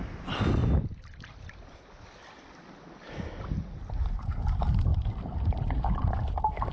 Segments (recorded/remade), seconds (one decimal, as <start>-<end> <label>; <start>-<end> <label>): 0.0-0.6 recorded; 0.6-1.3 remade; 1.3-4.9 recorded; 4.9-5.6 remade; 5.6-6.7 recorded